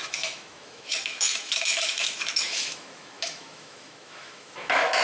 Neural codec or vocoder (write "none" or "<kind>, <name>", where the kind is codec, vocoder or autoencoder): autoencoder, DAC-VAE